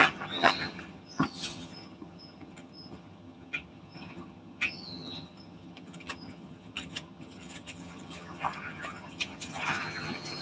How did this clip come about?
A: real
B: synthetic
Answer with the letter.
B